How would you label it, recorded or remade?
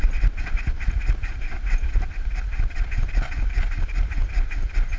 recorded